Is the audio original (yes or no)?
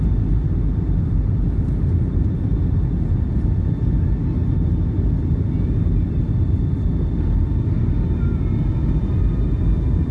yes